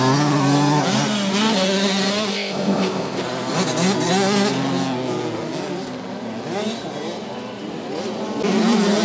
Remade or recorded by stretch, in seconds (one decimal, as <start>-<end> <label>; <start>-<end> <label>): 0.0-2.3 recorded; 2.3-3.2 remade; 3.2-9.0 recorded